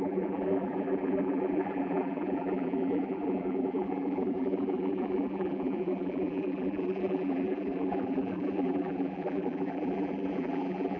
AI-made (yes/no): yes